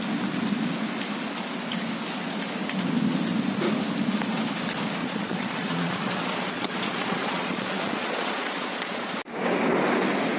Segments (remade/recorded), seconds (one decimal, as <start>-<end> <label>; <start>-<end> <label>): 0.0-5.0 recorded; 5.0-9.1 remade; 9.1-10.4 recorded